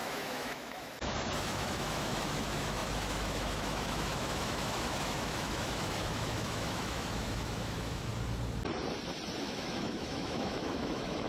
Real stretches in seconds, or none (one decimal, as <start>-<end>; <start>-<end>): 8.1-9.4